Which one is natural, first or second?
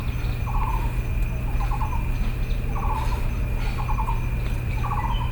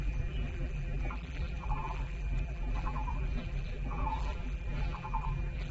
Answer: first